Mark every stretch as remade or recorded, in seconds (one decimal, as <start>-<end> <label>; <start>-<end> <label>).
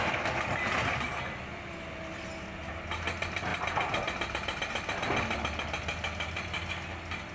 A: 0.0-7.3 recorded